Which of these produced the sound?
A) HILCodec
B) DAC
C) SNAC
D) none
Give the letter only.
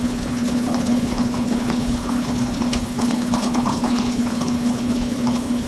A